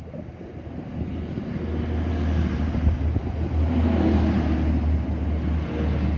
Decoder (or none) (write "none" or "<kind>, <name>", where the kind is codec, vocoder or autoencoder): none